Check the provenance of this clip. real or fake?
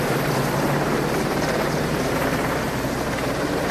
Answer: fake